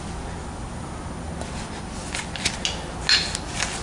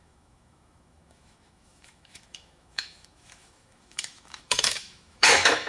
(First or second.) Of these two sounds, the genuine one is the first